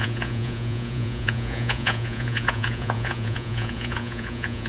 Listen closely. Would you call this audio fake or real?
fake